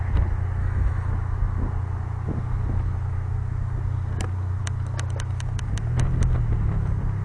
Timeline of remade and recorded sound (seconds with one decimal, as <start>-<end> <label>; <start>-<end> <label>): 0.0-0.6 recorded; 0.6-1.1 remade; 1.1-7.2 recorded